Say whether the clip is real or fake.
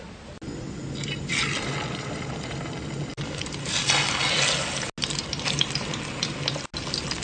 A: real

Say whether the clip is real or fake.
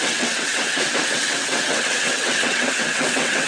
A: fake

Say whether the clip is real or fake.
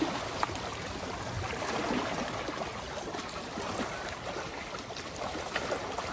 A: real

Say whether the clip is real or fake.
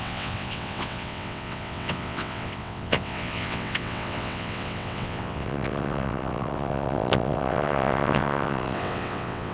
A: fake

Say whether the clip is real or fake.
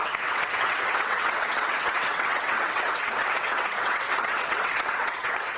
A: fake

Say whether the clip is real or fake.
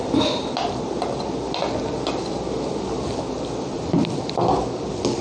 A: real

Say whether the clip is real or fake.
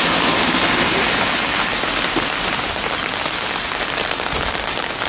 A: real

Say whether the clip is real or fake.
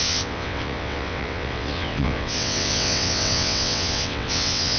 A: fake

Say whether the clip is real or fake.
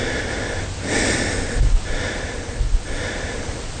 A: real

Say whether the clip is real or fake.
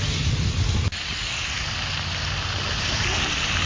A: real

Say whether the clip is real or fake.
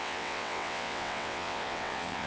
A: fake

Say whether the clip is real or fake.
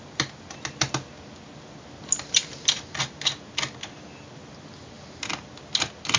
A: real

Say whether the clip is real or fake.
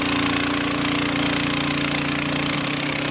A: real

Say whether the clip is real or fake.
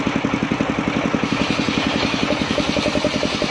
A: real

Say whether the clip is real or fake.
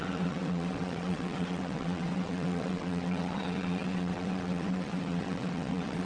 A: fake